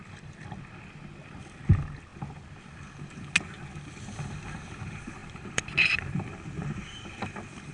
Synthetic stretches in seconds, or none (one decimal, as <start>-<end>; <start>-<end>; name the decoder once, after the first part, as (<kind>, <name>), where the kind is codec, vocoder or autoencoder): 5.2-6.8 (vocoder, BigVGAN v2)